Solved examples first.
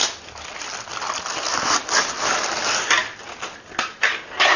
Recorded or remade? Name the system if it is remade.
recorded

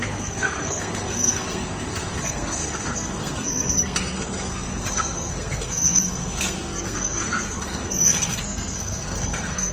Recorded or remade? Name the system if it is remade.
remade, codec, SNAC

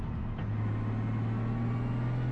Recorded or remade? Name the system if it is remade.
recorded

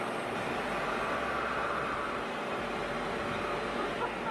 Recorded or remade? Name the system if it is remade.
recorded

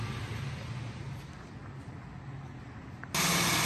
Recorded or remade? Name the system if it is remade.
recorded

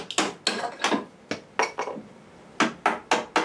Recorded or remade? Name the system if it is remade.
recorded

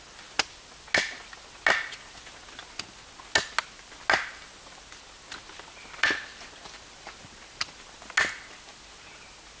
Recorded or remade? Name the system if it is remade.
recorded